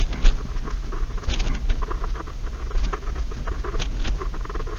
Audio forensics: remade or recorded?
recorded